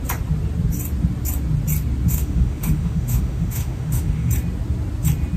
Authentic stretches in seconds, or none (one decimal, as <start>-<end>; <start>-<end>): 0.0-2.1; 4.3-5.4